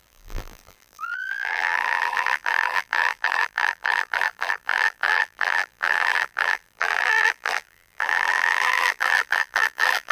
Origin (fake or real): fake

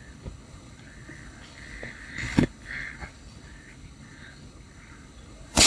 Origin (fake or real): fake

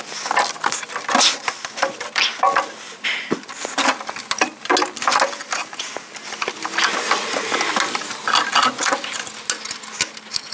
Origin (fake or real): real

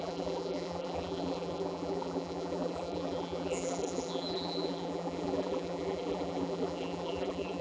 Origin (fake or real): fake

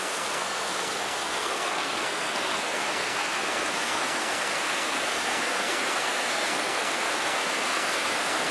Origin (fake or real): fake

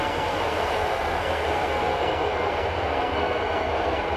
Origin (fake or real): fake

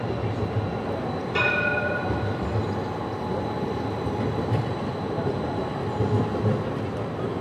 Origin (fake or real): real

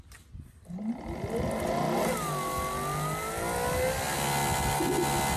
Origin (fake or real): real